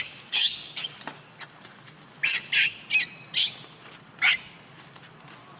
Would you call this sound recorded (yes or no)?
yes